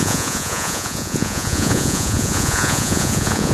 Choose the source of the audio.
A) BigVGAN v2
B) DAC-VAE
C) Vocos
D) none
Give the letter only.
C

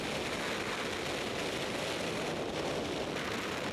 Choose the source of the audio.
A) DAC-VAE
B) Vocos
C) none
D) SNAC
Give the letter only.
C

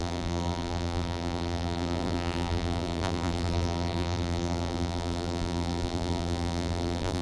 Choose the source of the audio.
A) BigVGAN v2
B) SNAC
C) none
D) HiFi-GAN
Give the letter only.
A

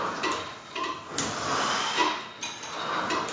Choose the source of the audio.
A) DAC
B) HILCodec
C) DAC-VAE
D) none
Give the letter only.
D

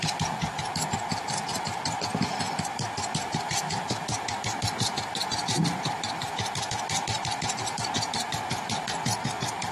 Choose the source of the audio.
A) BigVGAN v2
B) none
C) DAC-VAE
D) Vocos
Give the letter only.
B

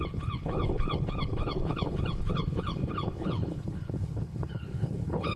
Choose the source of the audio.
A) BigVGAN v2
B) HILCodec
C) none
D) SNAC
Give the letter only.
B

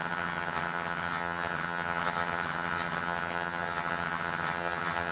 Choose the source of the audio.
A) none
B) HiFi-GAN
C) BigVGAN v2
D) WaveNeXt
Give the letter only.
B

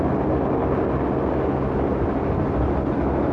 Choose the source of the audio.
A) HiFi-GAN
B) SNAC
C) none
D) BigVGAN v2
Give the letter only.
C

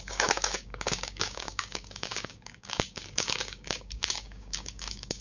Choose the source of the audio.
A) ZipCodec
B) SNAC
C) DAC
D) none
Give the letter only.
C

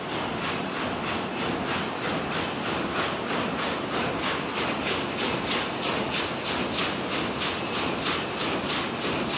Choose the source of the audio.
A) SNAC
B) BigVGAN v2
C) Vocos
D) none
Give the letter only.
D